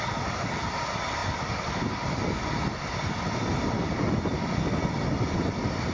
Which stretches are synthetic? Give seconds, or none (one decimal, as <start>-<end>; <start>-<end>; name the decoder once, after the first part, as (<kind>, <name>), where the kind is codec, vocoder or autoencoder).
none